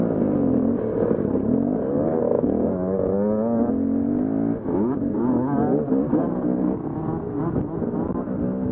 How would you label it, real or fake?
real